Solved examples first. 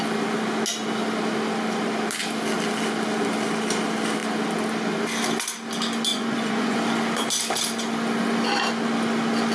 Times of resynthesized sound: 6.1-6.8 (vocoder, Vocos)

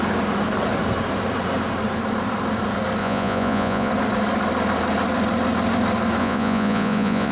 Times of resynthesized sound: 3.0-3.9 (vocoder, Vocos); 6.2-7.3

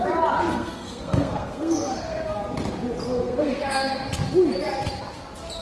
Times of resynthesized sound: 0.5-2.4 (codec, SNAC); 3.1-4.1

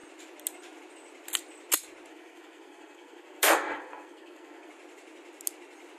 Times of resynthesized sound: 2.1-4.7 (codec, SNAC)

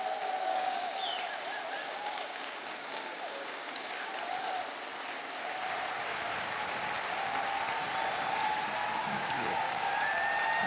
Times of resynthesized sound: 0.5-1.0 (codec, DAC); 1.8-4.1; 9.0-9.9